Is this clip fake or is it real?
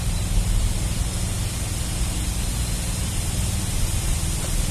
real